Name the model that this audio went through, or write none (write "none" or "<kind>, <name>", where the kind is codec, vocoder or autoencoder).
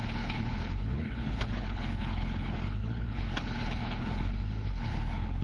codec, HILCodec